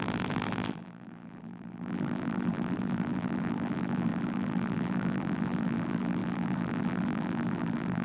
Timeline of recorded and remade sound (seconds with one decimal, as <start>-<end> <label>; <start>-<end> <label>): 0.0-8.0 remade